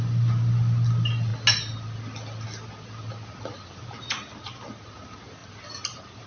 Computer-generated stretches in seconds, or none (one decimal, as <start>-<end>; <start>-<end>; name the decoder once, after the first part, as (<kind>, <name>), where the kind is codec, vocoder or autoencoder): none